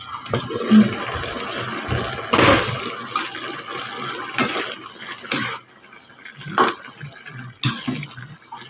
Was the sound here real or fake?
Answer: real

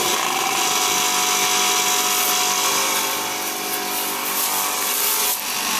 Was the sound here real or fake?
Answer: real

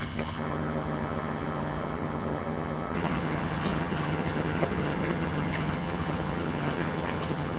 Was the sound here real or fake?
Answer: fake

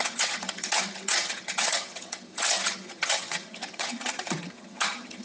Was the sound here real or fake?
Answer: fake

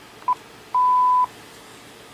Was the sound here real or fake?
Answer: real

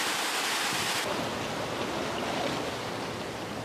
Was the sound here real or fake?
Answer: real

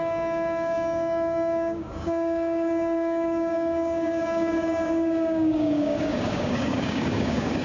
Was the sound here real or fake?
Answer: fake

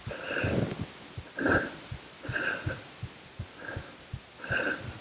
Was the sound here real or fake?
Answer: real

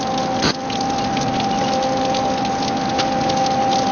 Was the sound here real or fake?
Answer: real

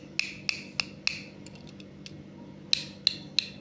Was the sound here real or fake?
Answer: real